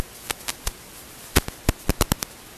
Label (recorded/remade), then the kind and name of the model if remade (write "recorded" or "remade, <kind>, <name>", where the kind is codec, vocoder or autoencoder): recorded